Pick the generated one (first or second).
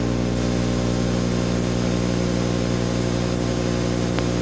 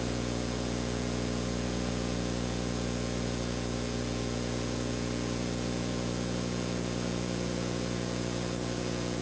second